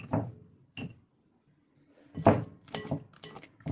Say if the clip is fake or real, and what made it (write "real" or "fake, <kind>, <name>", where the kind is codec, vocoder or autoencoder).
real